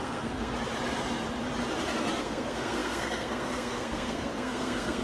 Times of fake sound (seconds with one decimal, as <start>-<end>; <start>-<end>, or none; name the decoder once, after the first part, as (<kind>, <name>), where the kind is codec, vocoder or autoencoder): 0.0-0.5 (codec, SNAC); 2.2-5.0